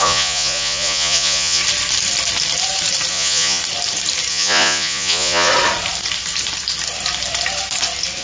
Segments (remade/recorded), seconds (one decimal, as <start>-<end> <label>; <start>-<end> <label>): 0.0-1.6 remade; 1.6-3.1 recorded; 3.1-3.6 remade; 3.6-4.3 recorded; 4.3-5.5 remade; 5.5-8.2 recorded